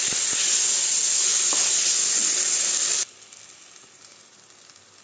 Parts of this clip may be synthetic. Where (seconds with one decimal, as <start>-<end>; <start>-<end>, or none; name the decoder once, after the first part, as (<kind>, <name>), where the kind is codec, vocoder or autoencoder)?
none